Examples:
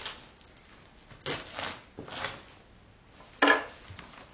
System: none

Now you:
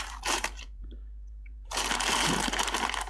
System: vocoder, BigVGAN v2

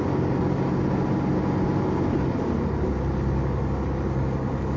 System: none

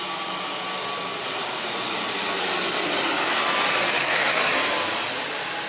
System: none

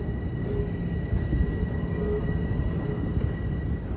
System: none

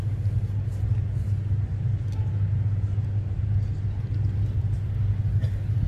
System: none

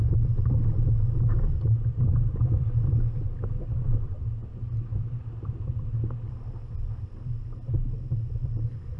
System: none